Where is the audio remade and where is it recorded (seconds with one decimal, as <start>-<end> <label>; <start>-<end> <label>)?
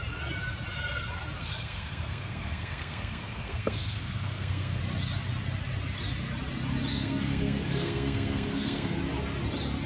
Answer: 0.0-1.4 recorded; 1.4-4.8 remade; 4.8-6.9 recorded; 6.9-9.0 remade; 9.0-9.9 recorded